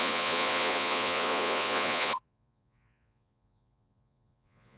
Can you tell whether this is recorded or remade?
remade